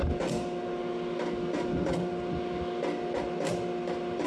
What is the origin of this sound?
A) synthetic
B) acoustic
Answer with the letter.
B